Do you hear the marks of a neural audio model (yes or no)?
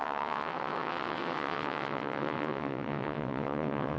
yes